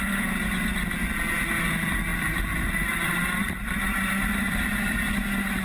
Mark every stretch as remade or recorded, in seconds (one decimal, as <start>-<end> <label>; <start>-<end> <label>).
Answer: 0.0-2.1 recorded; 2.1-5.0 remade; 5.0-5.6 recorded

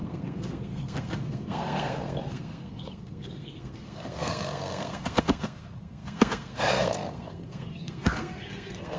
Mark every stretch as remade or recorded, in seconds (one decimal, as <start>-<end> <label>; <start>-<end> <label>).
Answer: 0.0-9.0 remade

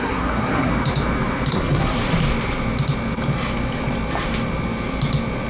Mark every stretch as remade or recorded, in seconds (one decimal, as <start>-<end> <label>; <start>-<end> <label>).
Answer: 0.0-0.7 remade; 0.7-1.5 recorded; 1.5-2.0 remade; 2.0-5.5 recorded

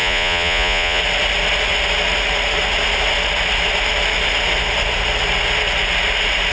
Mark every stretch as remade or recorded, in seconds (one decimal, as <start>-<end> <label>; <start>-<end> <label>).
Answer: 0.0-1.0 remade; 1.0-6.5 recorded

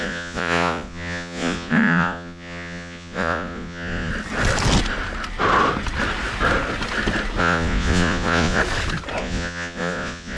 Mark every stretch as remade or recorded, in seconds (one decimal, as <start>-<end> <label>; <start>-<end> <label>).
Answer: 0.0-4.1 remade; 4.1-7.4 recorded; 7.4-8.6 remade; 8.6-9.2 recorded; 9.2-10.4 remade

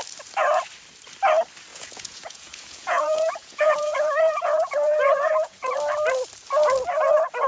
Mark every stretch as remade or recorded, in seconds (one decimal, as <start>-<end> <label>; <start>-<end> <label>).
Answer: 0.0-1.7 recorded; 1.7-5.7 remade; 5.7-7.5 recorded

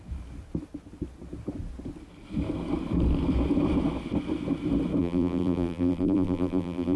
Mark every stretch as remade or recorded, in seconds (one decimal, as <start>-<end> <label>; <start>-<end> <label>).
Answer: 0.0-5.0 recorded; 5.0-7.0 remade